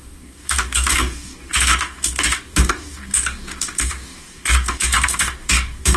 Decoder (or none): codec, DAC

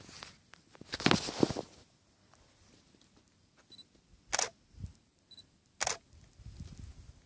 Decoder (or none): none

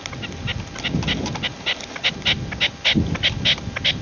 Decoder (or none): none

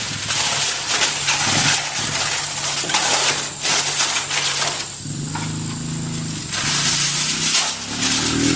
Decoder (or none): none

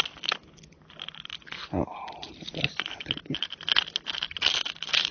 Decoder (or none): none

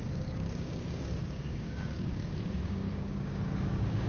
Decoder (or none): codec, DAC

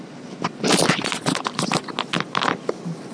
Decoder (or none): none